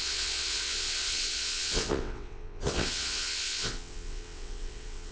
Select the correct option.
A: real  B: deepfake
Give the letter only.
B